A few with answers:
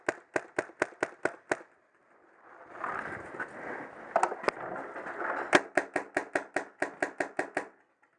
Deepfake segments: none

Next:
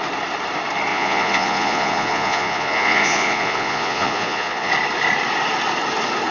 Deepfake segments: 0.9-4.7 (vocoder, Vocos)

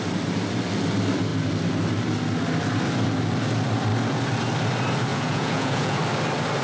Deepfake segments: 5.1-6.0 (vocoder, Vocos)

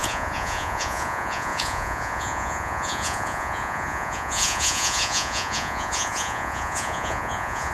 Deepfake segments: 0.0-7.7 (vocoder, Vocos)

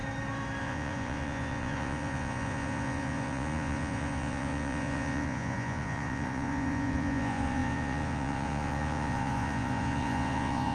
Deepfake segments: 0.6-10.7 (vocoder, Vocos)

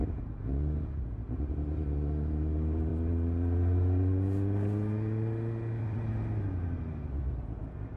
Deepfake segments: 0.0-1.5 (vocoder, Vocos)

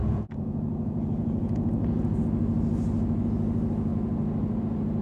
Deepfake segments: 0.0-2.2 (vocoder, Vocos)

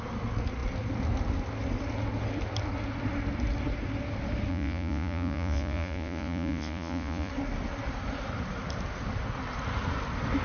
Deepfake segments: 4.5-7.3 (vocoder, Vocos)